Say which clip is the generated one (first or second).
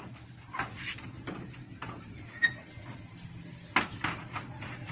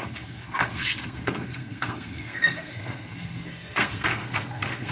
second